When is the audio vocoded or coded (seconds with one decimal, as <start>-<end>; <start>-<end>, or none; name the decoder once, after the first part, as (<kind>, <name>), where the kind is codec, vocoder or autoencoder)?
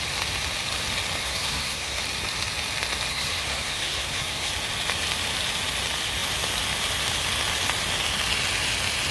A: 1.2-2.0 (codec, SNAC); 3.1-4.5